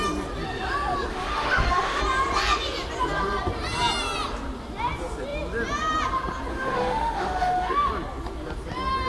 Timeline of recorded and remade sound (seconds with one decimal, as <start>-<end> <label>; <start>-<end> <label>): 0.0-1.1 recorded; 1.1-2.0 remade; 2.0-6.5 recorded; 6.5-7.9 remade; 7.9-9.1 recorded